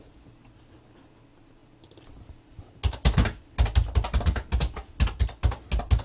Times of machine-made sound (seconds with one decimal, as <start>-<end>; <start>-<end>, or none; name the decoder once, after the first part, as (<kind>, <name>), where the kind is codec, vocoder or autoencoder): none